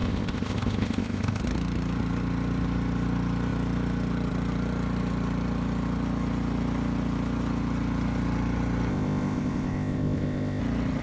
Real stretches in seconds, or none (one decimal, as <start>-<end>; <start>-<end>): 1.4-8.9; 10.6-11.0